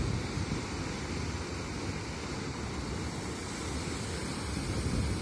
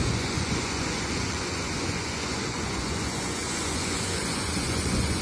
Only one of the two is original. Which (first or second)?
first